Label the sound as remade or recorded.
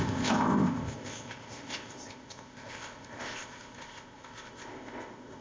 remade